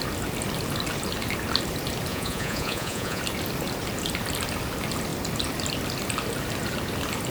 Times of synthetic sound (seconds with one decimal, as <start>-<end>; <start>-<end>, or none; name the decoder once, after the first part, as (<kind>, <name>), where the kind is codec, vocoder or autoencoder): 2.1-3.2 (vocoder, Vocos)